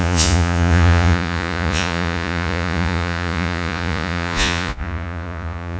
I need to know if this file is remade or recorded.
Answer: remade